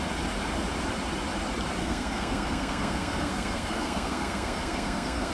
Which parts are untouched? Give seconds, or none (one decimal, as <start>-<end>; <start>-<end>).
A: 0.0-1.8